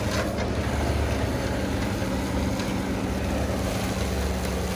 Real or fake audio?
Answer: real